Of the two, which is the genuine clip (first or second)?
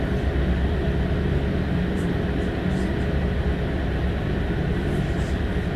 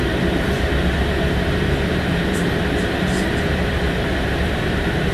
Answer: first